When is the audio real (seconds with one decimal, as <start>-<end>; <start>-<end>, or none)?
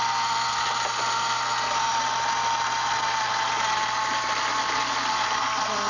0.0-5.9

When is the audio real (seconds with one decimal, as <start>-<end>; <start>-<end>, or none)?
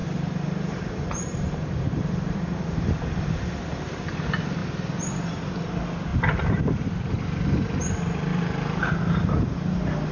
3.9-6.1; 7.2-8.3; 8.9-10.1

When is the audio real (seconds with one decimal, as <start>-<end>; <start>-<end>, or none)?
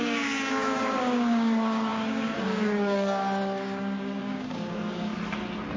5.1-5.8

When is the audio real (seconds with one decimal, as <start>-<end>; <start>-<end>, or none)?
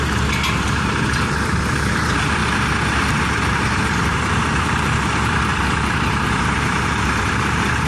2.4-3.1